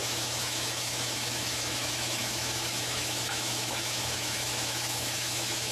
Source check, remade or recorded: remade